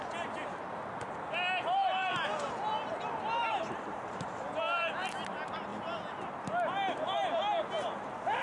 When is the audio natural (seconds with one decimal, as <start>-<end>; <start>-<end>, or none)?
0.0-8.4